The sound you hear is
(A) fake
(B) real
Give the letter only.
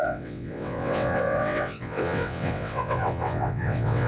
A